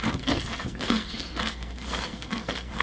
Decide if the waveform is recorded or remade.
remade